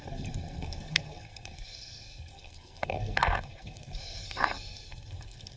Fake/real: fake